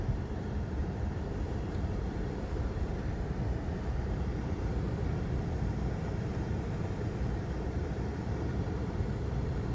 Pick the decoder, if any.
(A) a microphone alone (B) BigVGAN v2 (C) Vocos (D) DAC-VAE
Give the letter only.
B